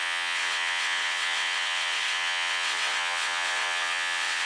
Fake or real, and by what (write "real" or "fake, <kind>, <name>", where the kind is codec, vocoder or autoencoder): fake, vocoder, WaveNeXt